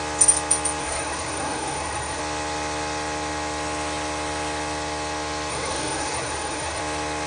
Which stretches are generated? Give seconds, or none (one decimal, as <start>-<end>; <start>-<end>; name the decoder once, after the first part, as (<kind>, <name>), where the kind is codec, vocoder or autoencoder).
0.8-2.2 (codec, SNAC); 5.5-6.8